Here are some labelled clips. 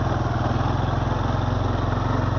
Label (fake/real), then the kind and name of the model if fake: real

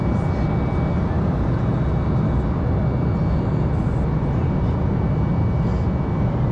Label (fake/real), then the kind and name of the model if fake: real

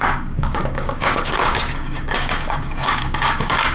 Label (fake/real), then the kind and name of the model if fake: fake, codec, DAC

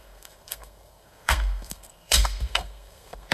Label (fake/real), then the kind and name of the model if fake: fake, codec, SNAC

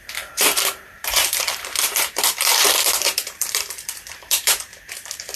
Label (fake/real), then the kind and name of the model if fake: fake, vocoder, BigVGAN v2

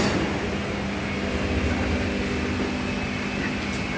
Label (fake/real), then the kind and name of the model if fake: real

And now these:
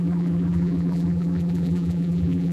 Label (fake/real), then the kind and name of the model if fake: fake, vocoder, BigVGAN v2